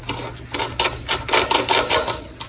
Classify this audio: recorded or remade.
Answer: recorded